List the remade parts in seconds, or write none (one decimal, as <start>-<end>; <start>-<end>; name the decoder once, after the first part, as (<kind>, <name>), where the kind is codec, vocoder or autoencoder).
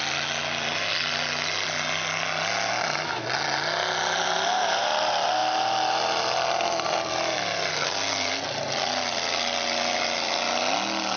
7.7-8.4 (codec, SNAC)